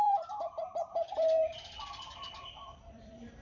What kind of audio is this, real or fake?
fake